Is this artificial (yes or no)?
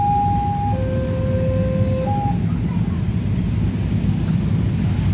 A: no